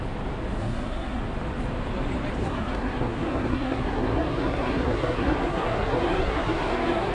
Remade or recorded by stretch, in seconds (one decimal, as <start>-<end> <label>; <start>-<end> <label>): 0.0-0.6 recorded; 0.6-1.2 remade; 1.2-2.4 recorded; 2.4-7.1 remade

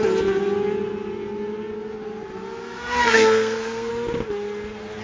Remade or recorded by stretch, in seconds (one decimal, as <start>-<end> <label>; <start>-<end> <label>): 0.0-2.6 recorded; 2.6-3.9 remade; 3.9-5.0 recorded

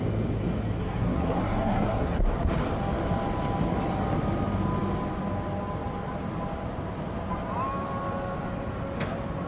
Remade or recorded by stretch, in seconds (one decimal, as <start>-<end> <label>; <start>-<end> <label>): 0.0-0.8 recorded; 0.8-2.2 remade; 2.2-9.5 recorded

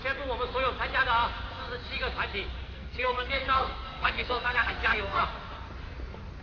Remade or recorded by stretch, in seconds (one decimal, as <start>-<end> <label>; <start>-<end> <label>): 0.0-2.6 recorded; 2.6-5.2 remade; 5.2-6.4 recorded